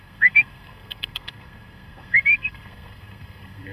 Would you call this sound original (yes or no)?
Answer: no